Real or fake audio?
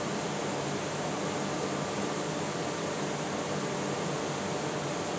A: real